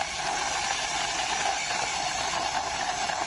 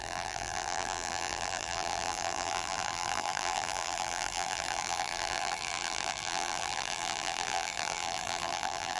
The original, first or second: first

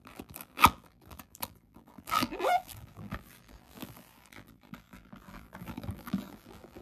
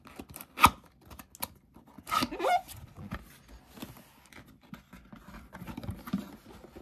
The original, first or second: second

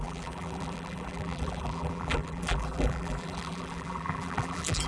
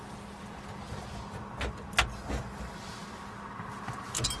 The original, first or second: second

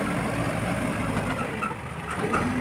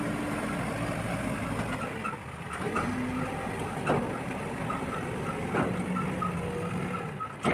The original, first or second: second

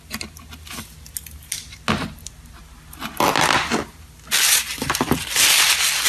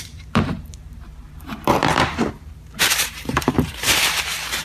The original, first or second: first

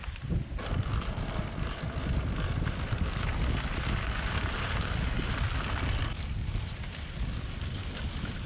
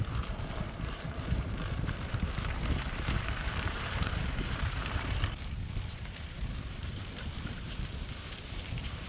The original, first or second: first